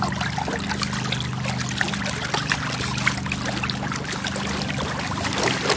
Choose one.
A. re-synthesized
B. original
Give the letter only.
B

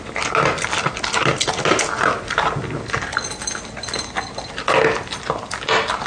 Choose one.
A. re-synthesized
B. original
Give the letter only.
B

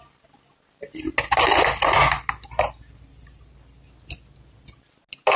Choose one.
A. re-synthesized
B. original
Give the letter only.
B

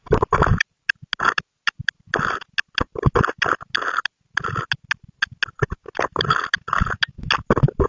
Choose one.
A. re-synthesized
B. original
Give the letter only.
B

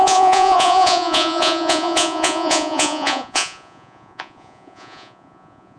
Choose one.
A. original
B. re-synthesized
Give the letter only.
B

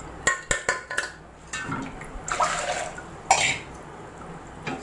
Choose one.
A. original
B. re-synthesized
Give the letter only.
A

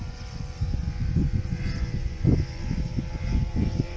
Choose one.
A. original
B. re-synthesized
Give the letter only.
B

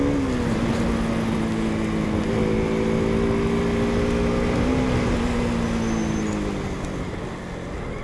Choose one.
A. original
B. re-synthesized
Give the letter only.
A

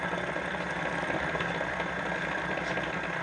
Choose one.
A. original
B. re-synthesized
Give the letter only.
A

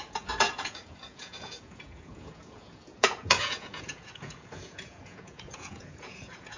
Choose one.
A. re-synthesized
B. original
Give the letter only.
A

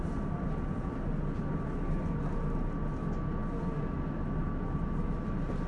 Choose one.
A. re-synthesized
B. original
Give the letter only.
B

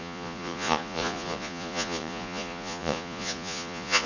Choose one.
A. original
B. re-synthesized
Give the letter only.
B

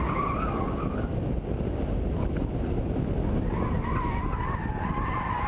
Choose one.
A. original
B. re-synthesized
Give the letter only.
A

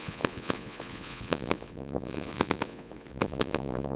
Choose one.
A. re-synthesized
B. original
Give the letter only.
A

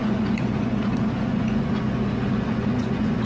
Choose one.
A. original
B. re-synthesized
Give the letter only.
B